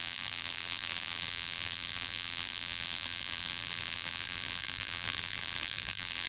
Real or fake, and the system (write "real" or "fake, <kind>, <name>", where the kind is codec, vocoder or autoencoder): fake, vocoder, BigVGAN v2